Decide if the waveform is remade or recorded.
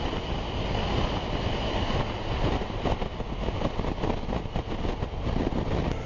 recorded